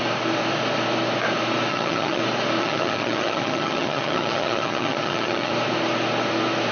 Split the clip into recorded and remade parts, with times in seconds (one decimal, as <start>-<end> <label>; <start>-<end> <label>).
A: 0.0-1.7 recorded; 1.7-2.2 remade; 2.2-2.6 recorded; 2.6-5.5 remade; 5.5-6.7 recorded